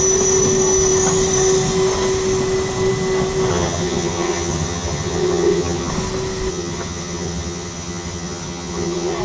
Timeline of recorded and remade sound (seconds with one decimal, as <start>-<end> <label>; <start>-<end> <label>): 0.0-3.5 recorded; 3.5-5.9 remade; 5.9-6.5 recorded; 6.5-9.2 remade